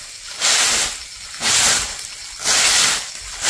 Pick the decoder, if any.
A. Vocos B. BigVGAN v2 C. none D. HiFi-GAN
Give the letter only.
C